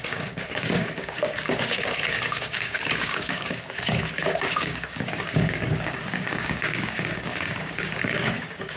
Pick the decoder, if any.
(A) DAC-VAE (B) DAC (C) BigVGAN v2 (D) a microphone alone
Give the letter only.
B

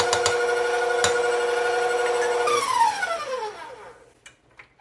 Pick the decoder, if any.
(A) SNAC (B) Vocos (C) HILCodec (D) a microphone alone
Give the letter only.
D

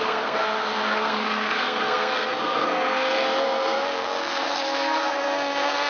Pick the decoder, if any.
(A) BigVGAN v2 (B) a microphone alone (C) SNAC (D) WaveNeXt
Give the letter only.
C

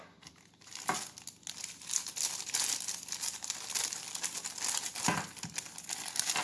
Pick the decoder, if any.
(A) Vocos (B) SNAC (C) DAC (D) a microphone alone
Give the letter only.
D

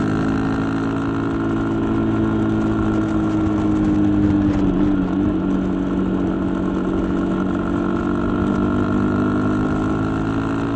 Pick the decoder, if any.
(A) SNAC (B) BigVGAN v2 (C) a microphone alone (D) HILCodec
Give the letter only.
C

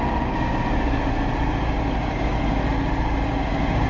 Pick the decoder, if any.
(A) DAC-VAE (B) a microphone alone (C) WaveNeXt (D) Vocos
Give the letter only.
B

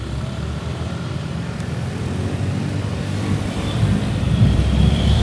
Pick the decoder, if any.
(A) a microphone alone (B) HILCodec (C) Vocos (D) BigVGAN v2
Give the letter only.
D